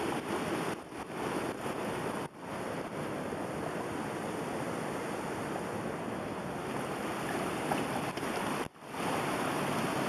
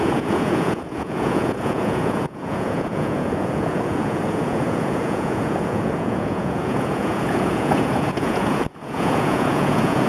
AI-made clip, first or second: second